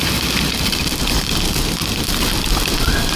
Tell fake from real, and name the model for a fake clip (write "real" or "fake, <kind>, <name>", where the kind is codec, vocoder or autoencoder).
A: real